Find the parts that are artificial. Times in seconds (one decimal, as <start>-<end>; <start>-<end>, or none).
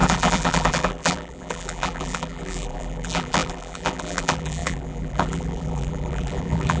0.0-6.8